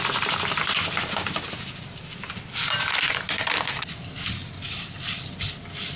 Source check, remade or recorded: recorded